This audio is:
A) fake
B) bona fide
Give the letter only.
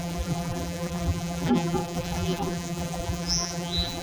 A